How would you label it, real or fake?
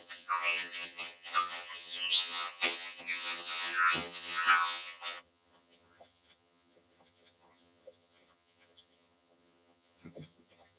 fake